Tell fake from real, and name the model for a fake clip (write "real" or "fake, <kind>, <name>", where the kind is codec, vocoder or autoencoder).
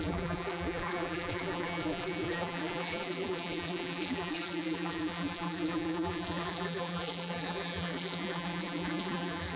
fake, vocoder, BigVGAN v2